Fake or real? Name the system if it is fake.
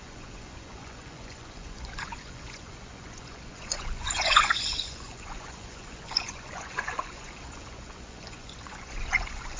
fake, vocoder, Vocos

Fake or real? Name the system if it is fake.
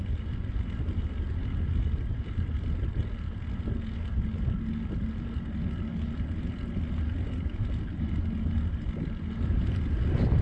real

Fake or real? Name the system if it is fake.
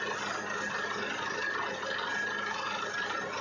real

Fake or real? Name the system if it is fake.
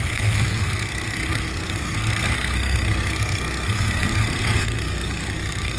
fake, codec, SNAC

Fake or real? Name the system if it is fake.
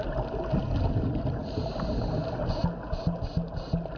real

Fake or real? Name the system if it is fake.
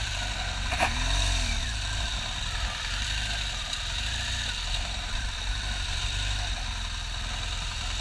fake, vocoder, BigVGAN v2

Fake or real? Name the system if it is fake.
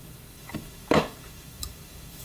fake, autoencoder, DAC-VAE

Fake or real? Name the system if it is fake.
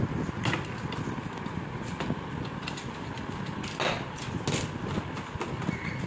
real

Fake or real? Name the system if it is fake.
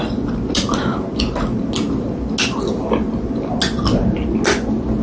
real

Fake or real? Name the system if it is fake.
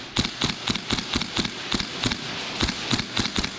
real